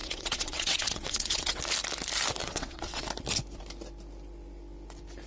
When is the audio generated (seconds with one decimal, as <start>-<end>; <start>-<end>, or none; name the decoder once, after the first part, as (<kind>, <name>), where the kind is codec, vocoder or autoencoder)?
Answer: 0.0-1.6 (vocoder, WaveNeXt); 2.4-3.0